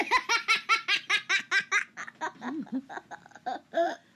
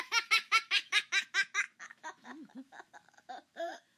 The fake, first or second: second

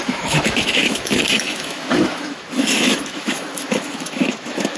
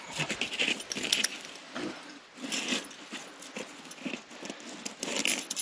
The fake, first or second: first